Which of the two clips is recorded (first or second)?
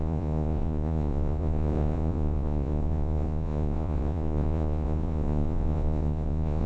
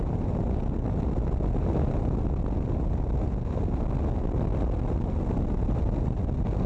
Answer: second